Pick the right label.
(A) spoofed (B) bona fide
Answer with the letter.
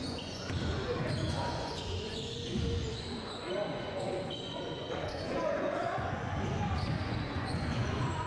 A